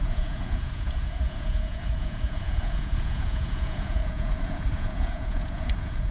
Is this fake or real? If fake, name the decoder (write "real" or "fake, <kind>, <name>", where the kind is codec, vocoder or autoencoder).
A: fake, vocoder, Vocos